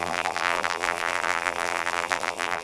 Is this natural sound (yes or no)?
no